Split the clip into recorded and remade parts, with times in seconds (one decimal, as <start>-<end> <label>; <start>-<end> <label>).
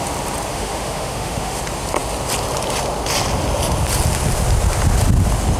0.0-0.5 recorded; 0.5-1.6 remade; 1.6-5.6 recorded